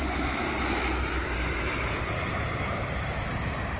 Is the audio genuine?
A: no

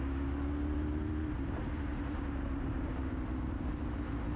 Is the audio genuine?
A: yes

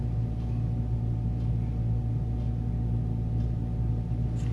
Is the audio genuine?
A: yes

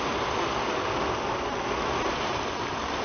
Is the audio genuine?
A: yes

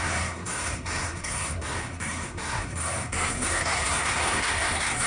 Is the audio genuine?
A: no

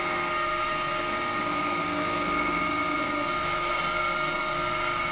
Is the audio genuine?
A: no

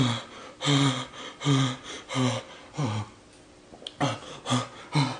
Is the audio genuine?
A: yes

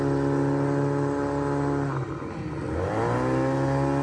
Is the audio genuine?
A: yes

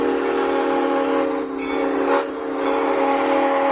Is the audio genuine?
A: yes